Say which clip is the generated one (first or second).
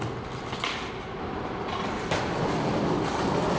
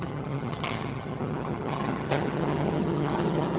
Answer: second